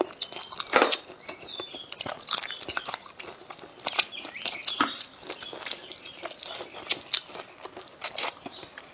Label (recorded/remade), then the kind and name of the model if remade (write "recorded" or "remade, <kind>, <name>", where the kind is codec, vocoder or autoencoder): recorded